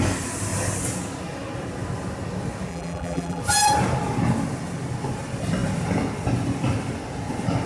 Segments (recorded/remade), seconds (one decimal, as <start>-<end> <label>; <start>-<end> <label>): 0.0-2.7 recorded; 2.7-3.4 remade; 3.4-7.7 recorded